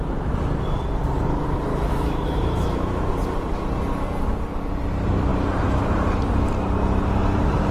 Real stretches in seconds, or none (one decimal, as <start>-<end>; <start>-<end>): 0.0-1.7; 3.1-7.7